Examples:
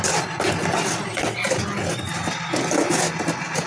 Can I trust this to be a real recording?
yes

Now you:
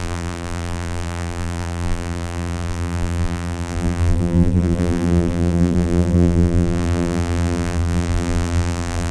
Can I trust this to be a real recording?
no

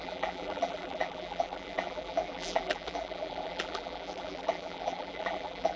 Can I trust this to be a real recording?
no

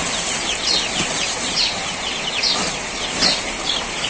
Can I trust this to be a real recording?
yes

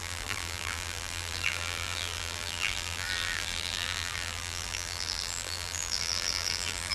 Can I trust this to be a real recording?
no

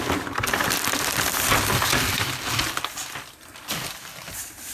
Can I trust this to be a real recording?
yes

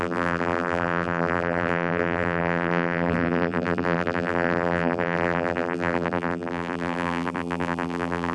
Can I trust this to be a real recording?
no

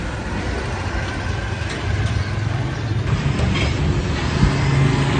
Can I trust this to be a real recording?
yes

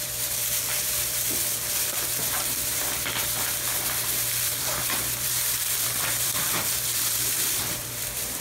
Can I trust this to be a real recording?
no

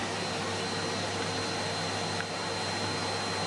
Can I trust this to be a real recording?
yes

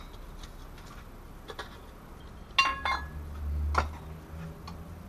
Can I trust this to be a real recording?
yes